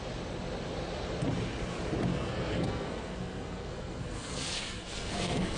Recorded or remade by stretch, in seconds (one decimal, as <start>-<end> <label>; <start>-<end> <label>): 0.0-2.1 recorded; 2.1-5.6 remade

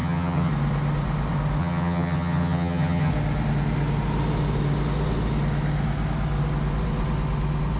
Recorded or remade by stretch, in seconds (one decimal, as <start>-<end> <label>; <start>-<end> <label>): 0.0-0.5 remade; 0.5-1.6 recorded; 1.6-3.1 remade; 3.1-7.8 recorded